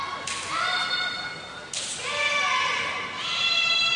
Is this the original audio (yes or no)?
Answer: yes